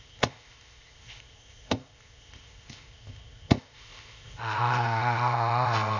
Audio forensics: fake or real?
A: fake